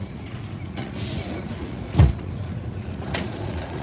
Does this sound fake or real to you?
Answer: fake